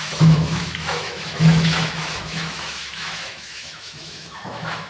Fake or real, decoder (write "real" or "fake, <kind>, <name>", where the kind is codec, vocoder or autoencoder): fake, autoencoder, DAC-VAE